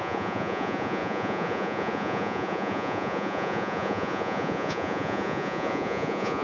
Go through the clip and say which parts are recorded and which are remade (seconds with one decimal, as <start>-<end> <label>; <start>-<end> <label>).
0.0-6.4 remade